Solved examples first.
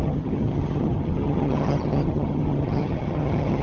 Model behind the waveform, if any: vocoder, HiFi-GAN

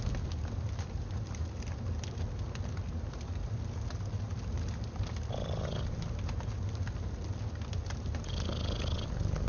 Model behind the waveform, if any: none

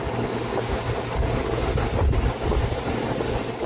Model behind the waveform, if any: none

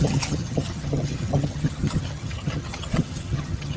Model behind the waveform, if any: vocoder, HiFi-GAN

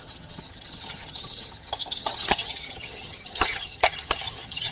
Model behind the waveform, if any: vocoder, HiFi-GAN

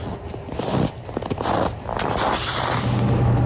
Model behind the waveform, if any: none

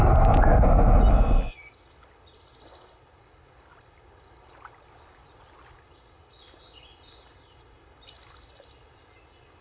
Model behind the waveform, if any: none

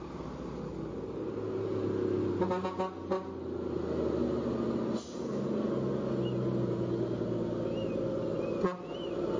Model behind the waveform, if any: none